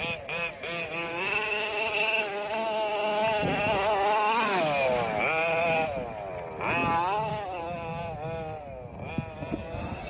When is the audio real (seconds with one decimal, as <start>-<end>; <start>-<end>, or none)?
0.0-10.1